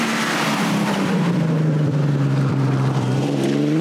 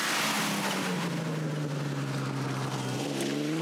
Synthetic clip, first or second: first